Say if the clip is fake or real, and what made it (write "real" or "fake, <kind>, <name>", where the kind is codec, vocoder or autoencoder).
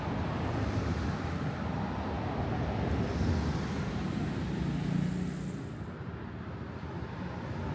real